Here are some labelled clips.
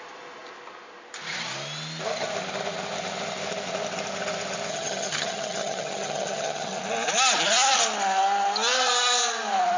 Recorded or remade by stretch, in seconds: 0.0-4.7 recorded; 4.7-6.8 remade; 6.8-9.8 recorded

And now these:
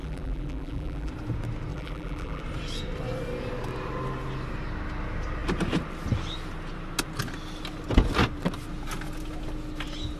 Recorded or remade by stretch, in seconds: 0.0-1.1 remade; 1.1-1.7 recorded; 1.7-2.4 remade; 2.4-10.2 recorded

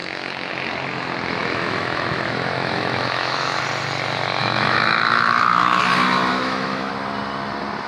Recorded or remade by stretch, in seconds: 0.0-0.5 remade; 0.5-1.4 recorded; 1.4-3.6 remade; 3.6-4.4 recorded; 4.4-5.8 remade; 5.8-6.3 recorded; 6.3-6.9 remade; 6.9-7.9 recorded

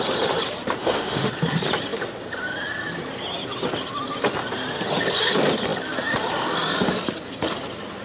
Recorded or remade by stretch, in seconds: 0.0-0.8 recorded; 0.8-1.3 remade; 1.3-8.0 recorded

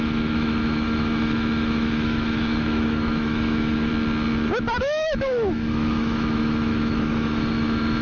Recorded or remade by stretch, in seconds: 0.0-3.9 remade; 3.9-4.8 recorded; 4.8-8.0 remade

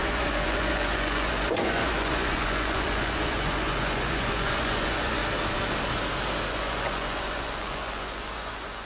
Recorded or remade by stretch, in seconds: 0.0-5.2 remade; 5.2-6.5 recorded; 6.5-8.9 remade

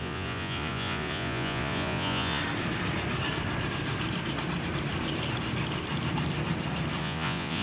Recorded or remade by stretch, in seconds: 0.0-2.4 remade; 2.4-7.0 recorded; 7.0-7.6 remade

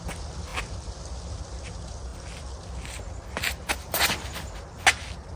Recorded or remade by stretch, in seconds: 0.0-5.4 recorded